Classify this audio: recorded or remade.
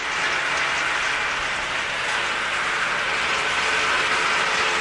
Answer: recorded